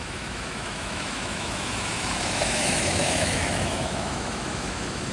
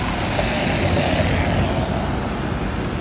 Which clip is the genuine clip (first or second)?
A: second